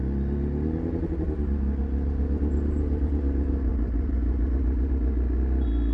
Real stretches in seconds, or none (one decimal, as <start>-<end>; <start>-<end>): 0.0-3.7; 4.9-5.9